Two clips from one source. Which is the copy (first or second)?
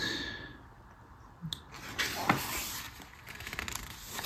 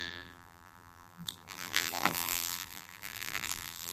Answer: second